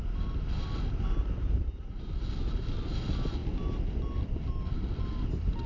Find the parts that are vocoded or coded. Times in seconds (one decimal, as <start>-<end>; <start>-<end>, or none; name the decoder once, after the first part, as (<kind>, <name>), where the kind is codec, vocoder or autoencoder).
none